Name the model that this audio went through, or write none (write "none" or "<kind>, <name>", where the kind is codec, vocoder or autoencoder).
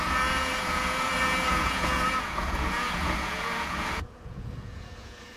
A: vocoder, Vocos